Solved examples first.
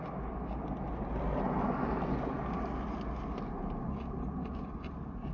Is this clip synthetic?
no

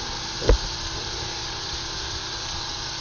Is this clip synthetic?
no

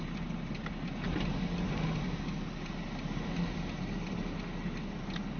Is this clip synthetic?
no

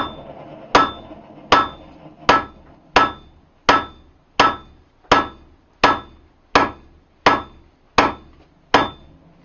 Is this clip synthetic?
no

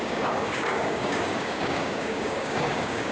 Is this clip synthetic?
yes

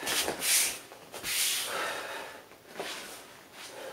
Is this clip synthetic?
no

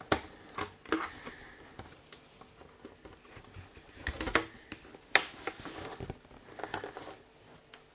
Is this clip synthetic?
no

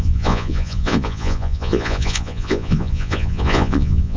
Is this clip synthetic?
yes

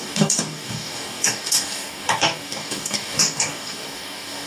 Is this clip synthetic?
yes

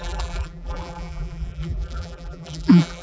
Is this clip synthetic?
yes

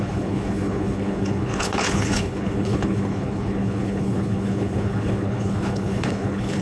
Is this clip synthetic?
yes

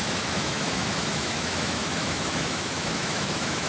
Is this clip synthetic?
yes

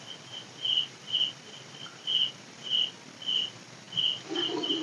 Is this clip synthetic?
no